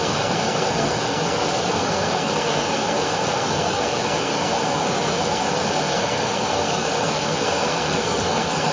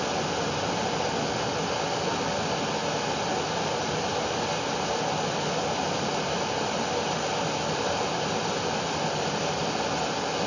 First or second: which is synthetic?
first